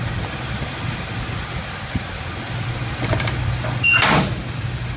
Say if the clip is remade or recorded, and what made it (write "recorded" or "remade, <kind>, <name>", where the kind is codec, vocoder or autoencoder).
recorded